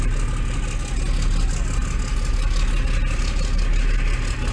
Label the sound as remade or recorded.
recorded